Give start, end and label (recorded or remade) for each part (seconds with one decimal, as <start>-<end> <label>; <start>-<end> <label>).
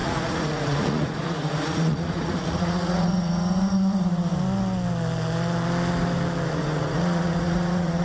0.0-4.3 remade; 4.3-6.5 recorded; 6.5-8.0 remade